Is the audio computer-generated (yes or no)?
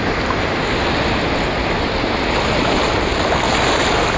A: no